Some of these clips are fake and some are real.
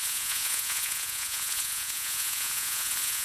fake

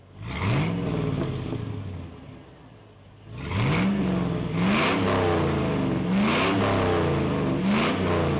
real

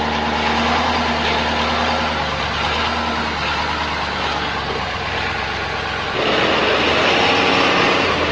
real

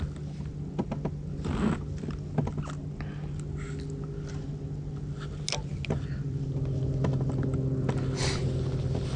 real